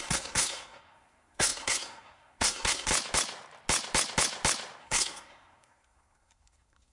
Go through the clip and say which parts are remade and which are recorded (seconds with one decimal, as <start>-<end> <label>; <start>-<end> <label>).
0.0-2.9 remade; 2.9-4.8 recorded; 4.8-6.9 remade